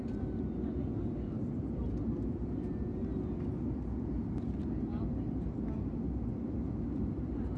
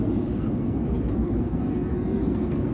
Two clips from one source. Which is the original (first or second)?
first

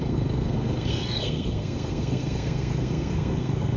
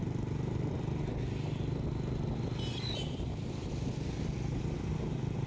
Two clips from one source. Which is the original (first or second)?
second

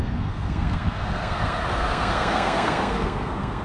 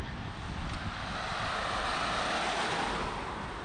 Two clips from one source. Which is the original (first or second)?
second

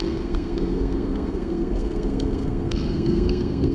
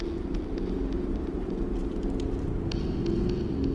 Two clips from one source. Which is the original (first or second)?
second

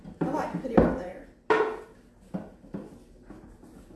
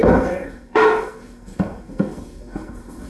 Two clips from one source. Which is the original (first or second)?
first